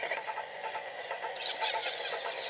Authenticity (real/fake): fake